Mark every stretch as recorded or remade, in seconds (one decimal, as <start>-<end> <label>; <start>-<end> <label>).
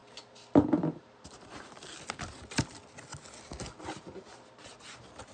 0.0-2.2 remade; 2.2-5.3 recorded